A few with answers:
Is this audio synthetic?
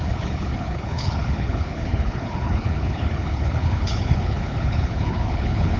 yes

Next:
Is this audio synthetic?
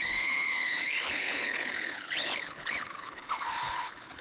yes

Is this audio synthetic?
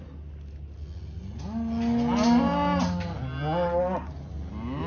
no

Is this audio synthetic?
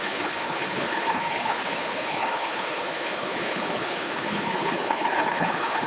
yes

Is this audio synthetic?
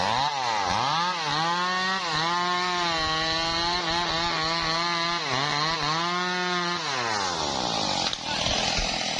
no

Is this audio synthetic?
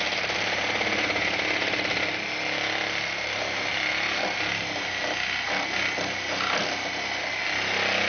no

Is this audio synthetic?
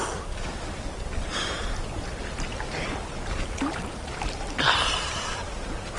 no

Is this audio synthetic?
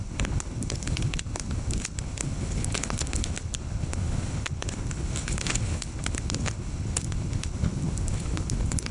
yes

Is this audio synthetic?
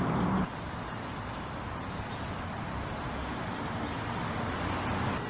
no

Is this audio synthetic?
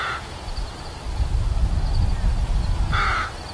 no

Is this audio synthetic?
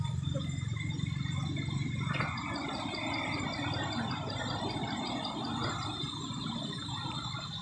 no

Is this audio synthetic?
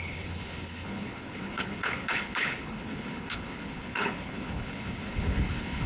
yes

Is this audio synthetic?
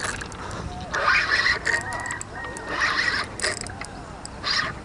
no